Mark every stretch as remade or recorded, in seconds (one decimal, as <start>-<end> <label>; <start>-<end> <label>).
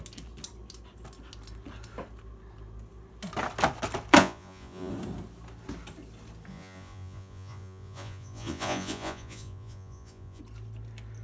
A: 0.0-4.2 recorded; 4.2-4.9 remade; 4.9-6.5 recorded; 6.5-10.4 remade; 10.4-11.2 recorded